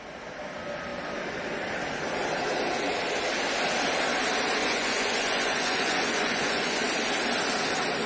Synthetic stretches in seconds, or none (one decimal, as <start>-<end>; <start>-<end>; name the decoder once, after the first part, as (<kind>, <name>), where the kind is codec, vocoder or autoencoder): 4.6-6.8 (vocoder, Vocos)